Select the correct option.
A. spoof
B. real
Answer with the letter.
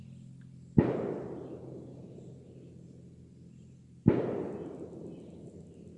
B